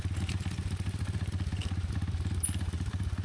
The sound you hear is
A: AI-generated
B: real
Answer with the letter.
B